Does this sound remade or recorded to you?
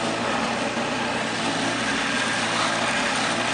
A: recorded